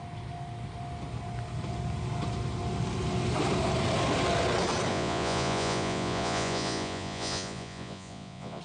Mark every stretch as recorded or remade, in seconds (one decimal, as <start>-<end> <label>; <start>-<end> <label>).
0.0-4.9 recorded; 4.9-8.6 remade